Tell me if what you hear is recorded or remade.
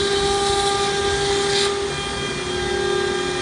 recorded